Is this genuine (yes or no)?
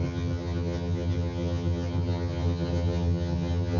no